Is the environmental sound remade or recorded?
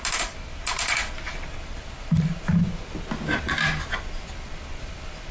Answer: recorded